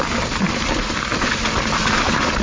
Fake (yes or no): no